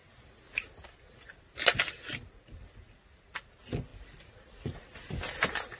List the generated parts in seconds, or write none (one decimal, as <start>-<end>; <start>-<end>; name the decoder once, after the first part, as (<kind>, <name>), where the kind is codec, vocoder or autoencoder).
none